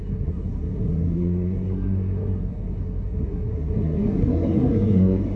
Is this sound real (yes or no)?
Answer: no